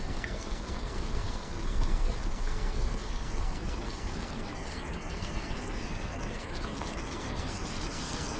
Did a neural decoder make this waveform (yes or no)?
yes